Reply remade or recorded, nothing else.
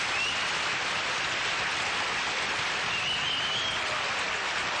recorded